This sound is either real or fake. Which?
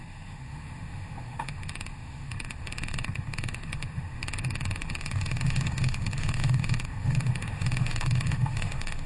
fake